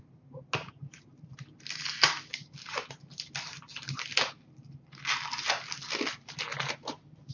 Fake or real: real